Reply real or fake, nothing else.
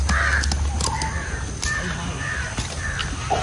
real